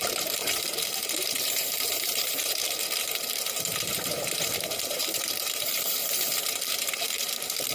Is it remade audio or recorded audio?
remade